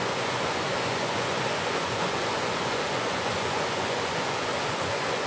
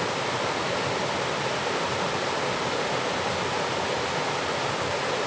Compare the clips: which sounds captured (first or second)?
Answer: second